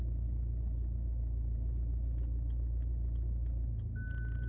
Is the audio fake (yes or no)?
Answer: no